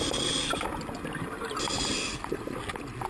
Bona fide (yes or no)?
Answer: yes